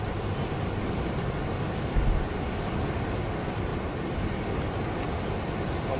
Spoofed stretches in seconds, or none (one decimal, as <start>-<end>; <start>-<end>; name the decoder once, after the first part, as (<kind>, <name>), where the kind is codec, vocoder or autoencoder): none